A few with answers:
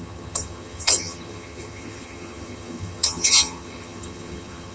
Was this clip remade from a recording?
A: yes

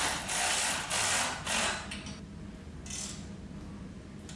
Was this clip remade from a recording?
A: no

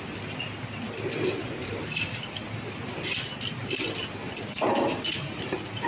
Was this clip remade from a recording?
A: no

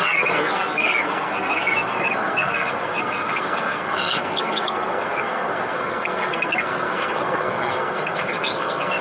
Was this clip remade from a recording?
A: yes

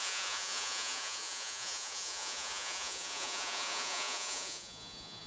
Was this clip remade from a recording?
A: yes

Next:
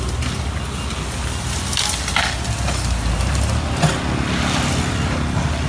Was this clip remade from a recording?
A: no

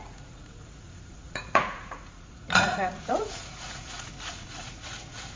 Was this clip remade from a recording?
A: yes